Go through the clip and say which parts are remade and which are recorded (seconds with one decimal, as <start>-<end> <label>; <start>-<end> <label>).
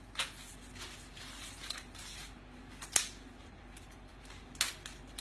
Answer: 0.0-5.2 recorded